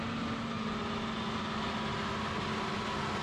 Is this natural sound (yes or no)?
yes